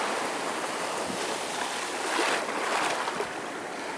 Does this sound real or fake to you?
real